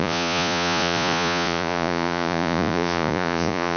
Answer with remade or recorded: remade